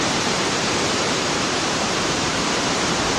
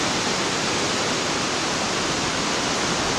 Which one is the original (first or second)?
second